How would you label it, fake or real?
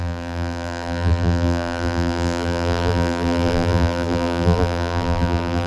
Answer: fake